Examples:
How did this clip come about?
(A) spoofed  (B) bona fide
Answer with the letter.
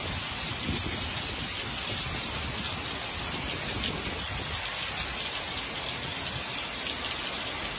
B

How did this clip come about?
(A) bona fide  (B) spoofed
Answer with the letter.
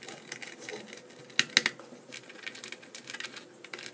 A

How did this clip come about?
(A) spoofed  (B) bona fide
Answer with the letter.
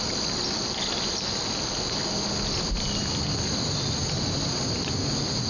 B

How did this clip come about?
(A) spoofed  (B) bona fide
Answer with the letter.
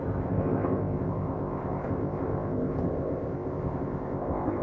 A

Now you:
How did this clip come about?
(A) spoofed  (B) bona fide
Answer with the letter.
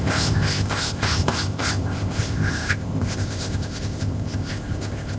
A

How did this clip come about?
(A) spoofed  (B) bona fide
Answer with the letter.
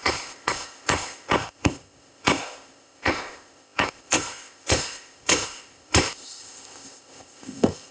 A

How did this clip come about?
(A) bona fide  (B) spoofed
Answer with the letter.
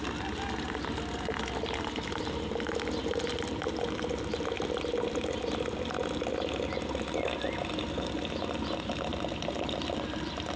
A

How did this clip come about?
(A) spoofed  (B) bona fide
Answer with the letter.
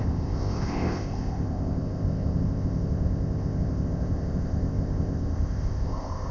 A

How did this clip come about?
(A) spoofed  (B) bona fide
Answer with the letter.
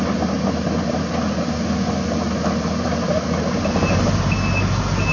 B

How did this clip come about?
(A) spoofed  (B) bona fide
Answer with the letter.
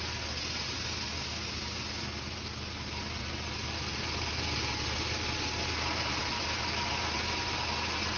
B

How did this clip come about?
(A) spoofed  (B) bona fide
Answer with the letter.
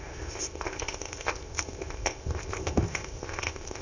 A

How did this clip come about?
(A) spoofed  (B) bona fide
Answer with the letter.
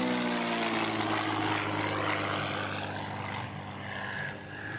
B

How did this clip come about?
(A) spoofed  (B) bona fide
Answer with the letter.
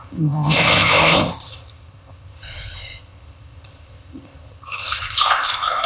A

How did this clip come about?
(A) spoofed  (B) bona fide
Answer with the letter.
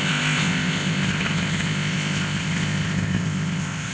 A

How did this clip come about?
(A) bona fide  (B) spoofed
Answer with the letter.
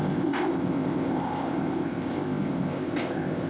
B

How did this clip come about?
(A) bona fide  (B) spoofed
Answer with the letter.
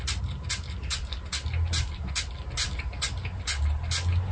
A